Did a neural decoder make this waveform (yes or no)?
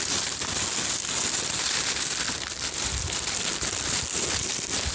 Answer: yes